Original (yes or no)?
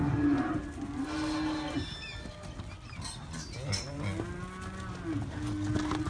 yes